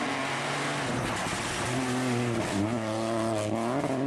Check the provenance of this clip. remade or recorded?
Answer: recorded